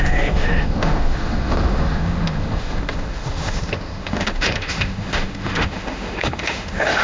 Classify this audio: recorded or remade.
remade